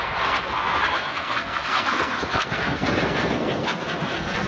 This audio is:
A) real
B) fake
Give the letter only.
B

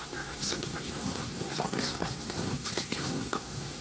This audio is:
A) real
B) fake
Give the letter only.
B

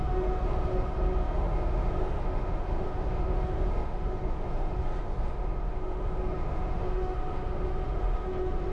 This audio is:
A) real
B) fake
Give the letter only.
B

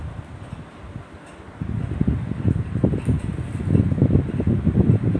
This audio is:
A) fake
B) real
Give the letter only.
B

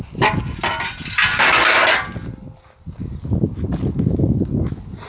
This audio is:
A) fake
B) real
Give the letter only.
B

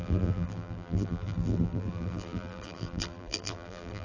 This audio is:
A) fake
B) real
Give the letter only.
A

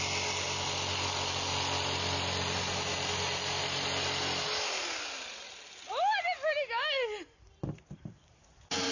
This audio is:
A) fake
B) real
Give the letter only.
B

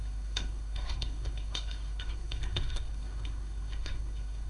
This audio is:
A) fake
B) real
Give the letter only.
A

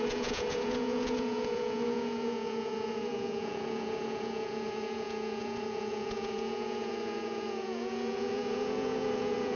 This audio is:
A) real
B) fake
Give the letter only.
B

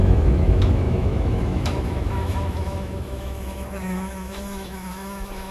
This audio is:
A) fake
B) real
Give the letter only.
A